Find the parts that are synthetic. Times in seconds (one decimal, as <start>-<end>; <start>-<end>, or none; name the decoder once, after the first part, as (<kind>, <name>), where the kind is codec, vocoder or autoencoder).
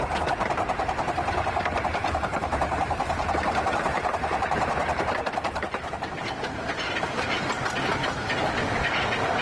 2.0-6.2 (vocoder, BigVGAN v2)